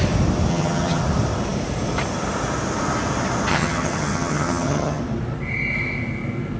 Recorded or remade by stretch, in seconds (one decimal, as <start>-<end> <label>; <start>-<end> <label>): 0.0-0.5 recorded; 0.5-1.0 remade; 1.0-3.5 recorded; 3.5-5.0 remade; 5.0-6.6 recorded

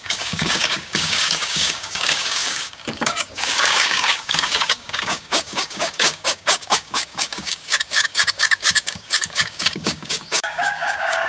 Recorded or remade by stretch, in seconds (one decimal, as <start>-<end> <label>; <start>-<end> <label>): 0.0-11.3 remade

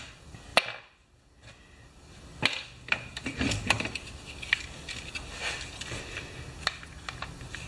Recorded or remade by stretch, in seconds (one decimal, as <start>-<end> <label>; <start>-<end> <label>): 0.0-7.7 recorded

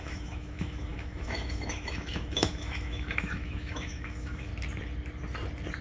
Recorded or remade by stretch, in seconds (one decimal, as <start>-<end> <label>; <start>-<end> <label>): 0.0-4.5 remade; 4.5-5.8 recorded